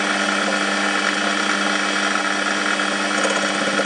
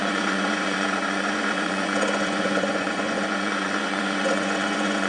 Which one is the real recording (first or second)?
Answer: first